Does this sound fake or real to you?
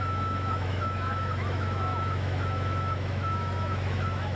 fake